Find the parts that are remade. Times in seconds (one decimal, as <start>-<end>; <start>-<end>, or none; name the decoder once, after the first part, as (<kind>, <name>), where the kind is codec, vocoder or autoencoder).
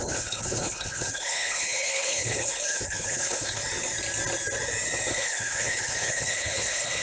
0.0-3.6 (codec, HILCodec); 5.1-7.0